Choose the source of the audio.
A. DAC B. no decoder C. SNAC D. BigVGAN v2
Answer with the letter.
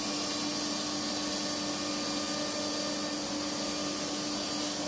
B